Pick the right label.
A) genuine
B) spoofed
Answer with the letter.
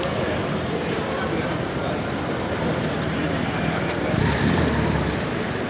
B